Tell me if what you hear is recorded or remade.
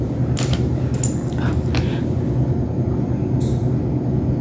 recorded